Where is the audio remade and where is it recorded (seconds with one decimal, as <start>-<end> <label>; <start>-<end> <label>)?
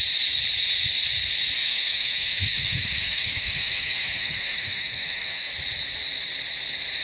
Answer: 0.0-1.6 recorded; 1.6-5.5 remade; 5.5-7.0 recorded